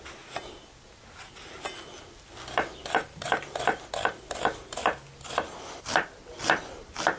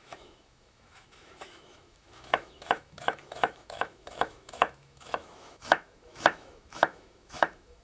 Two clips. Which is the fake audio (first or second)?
second